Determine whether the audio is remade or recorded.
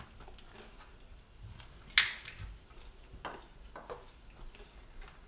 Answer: recorded